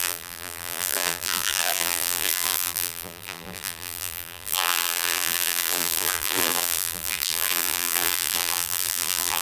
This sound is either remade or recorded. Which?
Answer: remade